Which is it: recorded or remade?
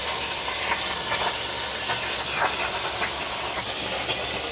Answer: recorded